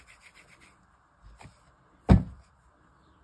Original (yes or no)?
yes